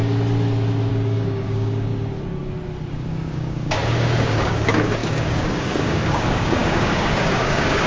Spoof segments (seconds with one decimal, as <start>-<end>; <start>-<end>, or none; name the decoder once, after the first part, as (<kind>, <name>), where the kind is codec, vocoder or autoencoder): 0.9-1.9 (codec, DAC); 2.9-7.9